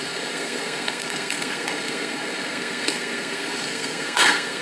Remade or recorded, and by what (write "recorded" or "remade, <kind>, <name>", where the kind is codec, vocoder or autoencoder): remade, codec, SNAC